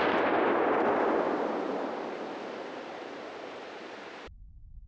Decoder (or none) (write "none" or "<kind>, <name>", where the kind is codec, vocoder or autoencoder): none